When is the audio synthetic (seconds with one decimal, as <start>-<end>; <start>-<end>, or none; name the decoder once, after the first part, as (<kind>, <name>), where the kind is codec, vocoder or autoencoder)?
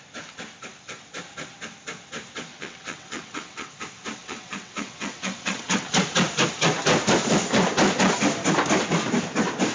2.5-3.7 (vocoder, WaveNeXt); 4.2-5.9